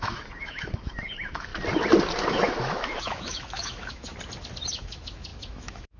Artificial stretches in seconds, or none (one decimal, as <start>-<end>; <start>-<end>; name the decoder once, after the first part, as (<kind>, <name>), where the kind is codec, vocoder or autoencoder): 0.0-1.5 (autoencoder, DAC-VAE); 2.3-4.1; 4.7-6.0